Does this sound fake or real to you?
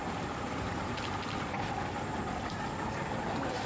real